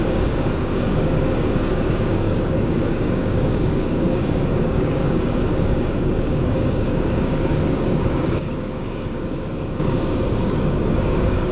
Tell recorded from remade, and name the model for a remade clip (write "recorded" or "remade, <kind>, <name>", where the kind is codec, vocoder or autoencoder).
remade, codec, DAC